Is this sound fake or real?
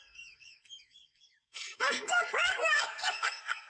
fake